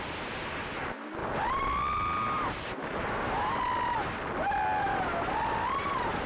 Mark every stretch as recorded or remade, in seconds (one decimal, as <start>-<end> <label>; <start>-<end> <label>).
0.0-6.3 recorded